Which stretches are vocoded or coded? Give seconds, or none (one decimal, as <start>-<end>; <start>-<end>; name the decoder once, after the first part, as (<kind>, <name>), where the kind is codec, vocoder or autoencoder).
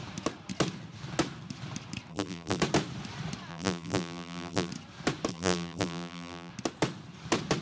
2.1-2.6 (vocoder, BigVGAN v2); 3.5-4.7; 5.3-6.5